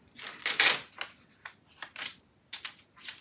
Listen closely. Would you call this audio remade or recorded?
recorded